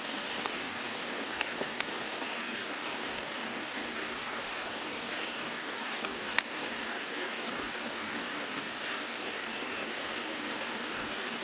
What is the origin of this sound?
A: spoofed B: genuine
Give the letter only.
A